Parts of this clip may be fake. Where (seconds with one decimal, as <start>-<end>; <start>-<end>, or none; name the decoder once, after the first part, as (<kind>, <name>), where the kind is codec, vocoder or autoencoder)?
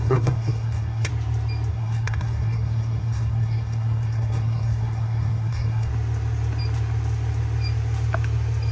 0.0-1.1 (codec, SNAC); 1.7-5.9